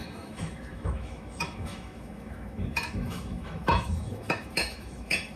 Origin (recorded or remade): remade